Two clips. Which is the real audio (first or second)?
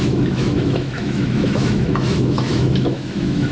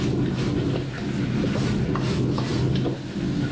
second